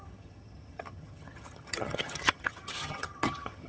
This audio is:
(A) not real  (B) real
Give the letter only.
A